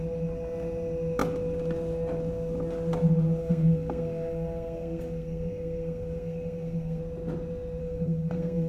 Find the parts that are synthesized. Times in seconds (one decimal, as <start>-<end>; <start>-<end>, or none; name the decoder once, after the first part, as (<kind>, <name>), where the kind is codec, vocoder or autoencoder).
3.4-7.0 (codec, SNAC); 7.8-8.7